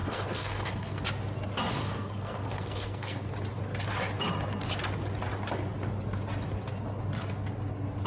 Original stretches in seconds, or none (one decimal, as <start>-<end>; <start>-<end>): 1.0-1.8; 3.3-8.1